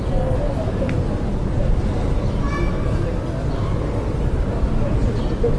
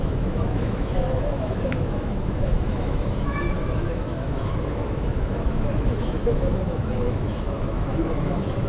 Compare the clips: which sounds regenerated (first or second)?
second